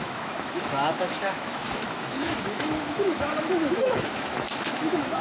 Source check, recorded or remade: remade